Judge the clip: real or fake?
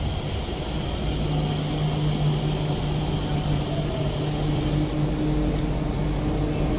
real